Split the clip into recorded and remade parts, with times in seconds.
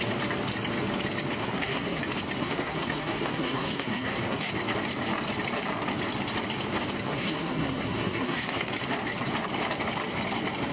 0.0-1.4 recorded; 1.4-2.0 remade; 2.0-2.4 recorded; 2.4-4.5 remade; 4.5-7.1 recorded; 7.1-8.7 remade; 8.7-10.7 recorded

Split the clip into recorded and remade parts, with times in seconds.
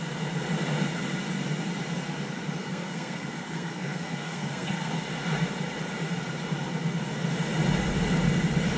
0.0-2.6 recorded; 2.6-4.9 remade; 4.9-8.8 recorded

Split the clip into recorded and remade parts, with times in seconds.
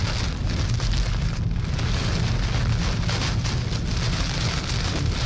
0.0-5.3 recorded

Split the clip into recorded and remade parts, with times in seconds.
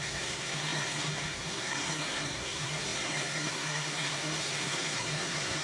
0.0-5.6 remade